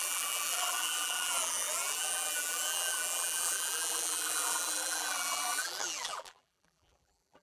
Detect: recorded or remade remade